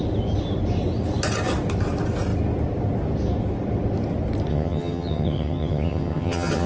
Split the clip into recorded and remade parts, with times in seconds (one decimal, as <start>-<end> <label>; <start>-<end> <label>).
0.0-4.5 recorded; 4.5-6.7 remade